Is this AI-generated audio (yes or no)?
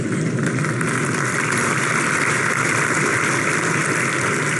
no